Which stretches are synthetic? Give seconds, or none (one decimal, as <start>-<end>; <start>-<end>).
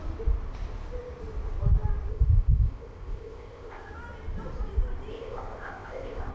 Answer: 2.1-3.9; 5.1-6.3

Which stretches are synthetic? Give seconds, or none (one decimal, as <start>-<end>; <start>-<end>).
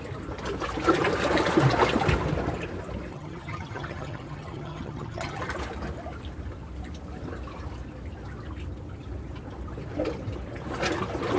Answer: 3.1-5.4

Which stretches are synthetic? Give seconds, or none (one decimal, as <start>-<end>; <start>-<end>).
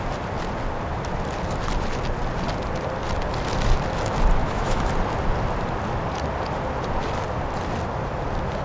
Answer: 4.4-4.9